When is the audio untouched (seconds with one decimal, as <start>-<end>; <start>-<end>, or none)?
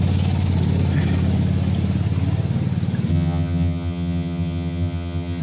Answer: 0.0-3.1